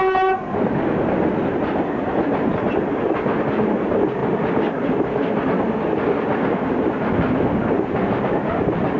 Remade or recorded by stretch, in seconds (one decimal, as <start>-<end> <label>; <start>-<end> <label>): 0.0-9.0 recorded